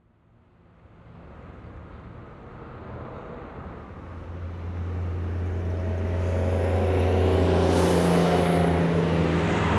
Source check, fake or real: real